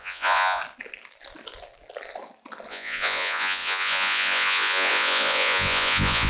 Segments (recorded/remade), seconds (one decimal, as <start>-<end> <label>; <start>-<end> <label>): 0.0-0.6 remade; 0.6-2.7 recorded; 2.7-6.3 remade